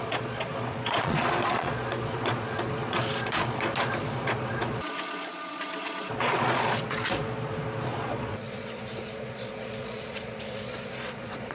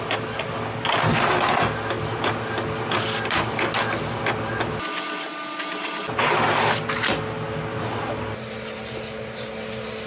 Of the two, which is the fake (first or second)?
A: first